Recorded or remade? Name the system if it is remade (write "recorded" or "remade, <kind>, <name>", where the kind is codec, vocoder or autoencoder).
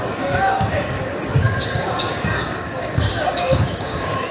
remade, codec, DAC